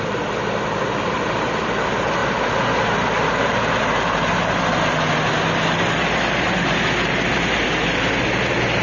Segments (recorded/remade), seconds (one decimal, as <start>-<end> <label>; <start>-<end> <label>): 0.0-8.8 recorded